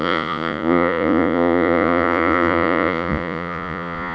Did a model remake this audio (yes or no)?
yes